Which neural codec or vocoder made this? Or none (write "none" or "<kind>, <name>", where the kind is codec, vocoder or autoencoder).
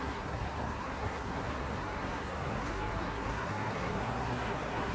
codec, SNAC